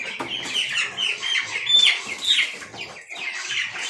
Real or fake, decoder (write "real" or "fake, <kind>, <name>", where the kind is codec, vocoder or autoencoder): real